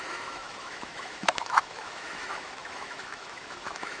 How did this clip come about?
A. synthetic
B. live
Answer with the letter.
A